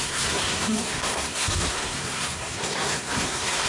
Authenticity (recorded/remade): remade